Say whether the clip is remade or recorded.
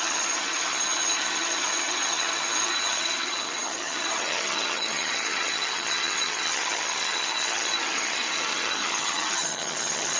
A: remade